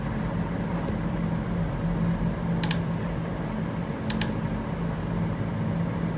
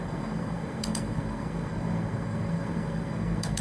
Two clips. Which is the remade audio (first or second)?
second